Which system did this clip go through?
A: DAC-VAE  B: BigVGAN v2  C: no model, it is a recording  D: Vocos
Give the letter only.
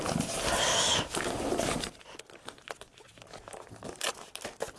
C